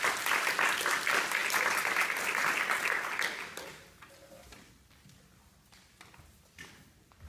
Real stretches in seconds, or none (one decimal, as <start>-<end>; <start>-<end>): 0.0-7.3